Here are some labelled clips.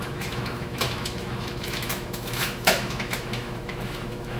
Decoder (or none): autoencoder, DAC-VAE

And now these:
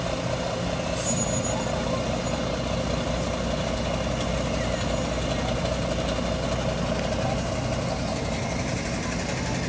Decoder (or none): none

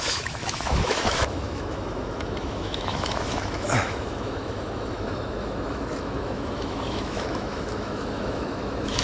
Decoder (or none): autoencoder, DAC-VAE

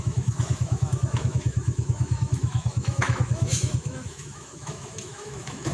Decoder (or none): autoencoder, DAC-VAE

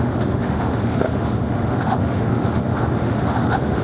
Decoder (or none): autoencoder, DAC-VAE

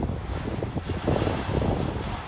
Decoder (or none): none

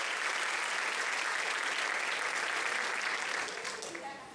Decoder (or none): none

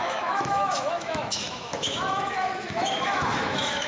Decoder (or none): autoencoder, DAC-VAE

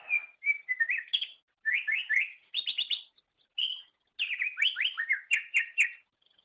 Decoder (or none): none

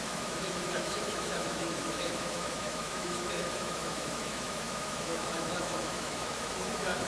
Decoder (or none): autoencoder, DAC-VAE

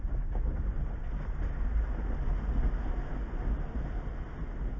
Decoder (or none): none